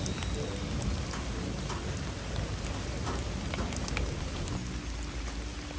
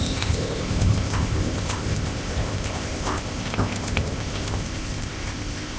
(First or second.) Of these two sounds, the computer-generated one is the second